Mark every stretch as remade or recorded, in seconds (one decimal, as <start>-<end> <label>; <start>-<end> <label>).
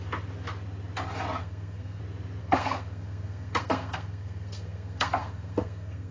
0.0-1.4 recorded; 1.4-2.0 remade; 2.0-2.4 recorded; 2.4-6.1 remade